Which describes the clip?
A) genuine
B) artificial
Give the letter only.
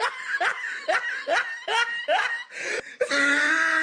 A